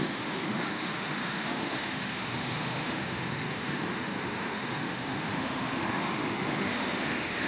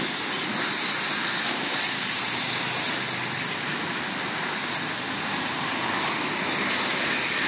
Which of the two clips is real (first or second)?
second